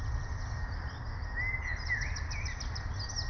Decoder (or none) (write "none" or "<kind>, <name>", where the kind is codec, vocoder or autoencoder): none